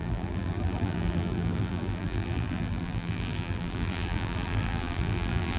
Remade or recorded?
remade